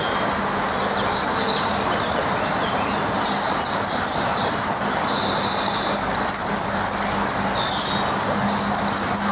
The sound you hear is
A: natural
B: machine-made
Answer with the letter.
A